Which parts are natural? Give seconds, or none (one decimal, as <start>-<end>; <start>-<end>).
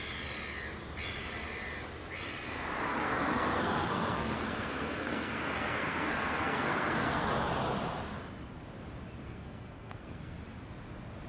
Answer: 0.0-2.9; 7.3-9.2; 10.4-11.3